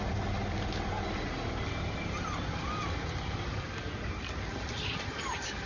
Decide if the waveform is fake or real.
real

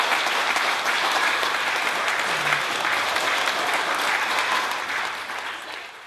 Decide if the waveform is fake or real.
real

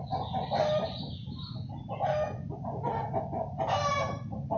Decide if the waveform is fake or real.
real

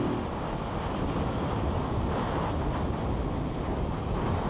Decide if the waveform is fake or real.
real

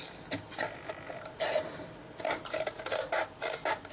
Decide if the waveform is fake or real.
real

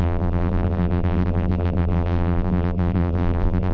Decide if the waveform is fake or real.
fake